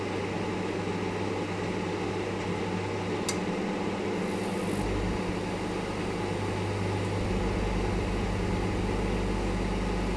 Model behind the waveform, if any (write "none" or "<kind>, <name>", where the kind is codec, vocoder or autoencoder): none